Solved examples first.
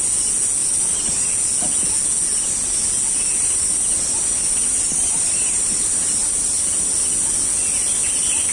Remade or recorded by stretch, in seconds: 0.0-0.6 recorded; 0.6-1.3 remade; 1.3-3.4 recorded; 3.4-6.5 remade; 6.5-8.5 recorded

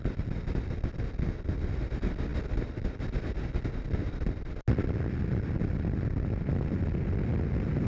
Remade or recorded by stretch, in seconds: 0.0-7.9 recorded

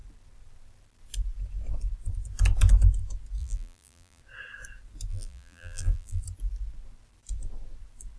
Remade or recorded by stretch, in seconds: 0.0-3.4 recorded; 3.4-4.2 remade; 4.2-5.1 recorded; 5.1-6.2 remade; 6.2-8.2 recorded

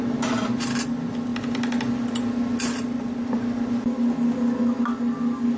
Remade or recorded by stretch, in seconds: 0.0-5.6 recorded

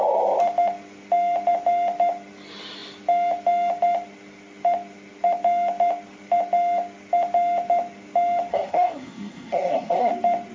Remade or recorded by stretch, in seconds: 0.0-8.5 recorded; 8.5-10.1 remade; 10.1-10.5 recorded